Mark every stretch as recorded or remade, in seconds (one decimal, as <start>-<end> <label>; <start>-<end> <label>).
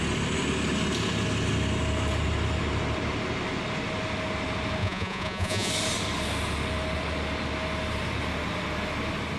0.0-4.8 recorded; 4.8-5.7 remade; 5.7-9.4 recorded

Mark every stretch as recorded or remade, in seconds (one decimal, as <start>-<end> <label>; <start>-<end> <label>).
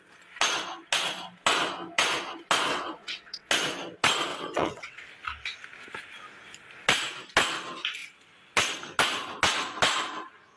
0.0-2.7 recorded; 2.7-3.5 remade; 3.5-4.3 recorded; 4.3-5.1 remade; 5.1-10.6 recorded